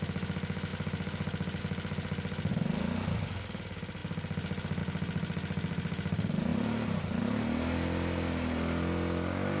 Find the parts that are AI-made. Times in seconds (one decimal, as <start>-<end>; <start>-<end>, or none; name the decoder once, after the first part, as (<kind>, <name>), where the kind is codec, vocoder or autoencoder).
none